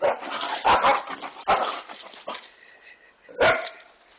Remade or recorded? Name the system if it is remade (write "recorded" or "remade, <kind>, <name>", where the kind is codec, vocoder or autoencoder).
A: recorded